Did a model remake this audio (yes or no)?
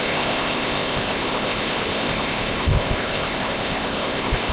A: yes